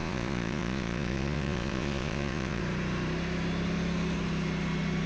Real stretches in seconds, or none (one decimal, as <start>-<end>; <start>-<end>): 2.6-5.1